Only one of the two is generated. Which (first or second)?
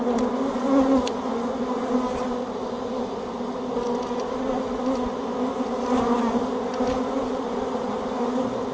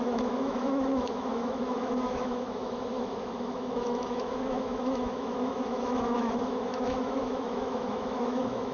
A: second